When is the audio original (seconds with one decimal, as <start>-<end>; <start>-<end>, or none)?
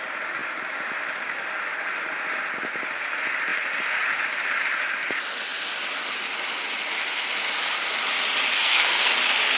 0.0-8.5; 9.1-9.6